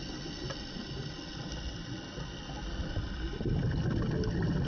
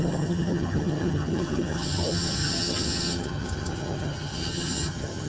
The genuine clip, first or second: first